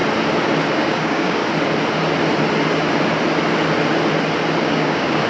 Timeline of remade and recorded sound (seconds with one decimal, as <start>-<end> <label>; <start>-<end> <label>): 0.0-0.7 recorded; 0.7-1.4 remade; 1.4-4.6 recorded; 4.6-5.3 remade